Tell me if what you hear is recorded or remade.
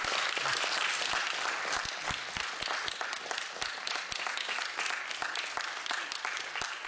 recorded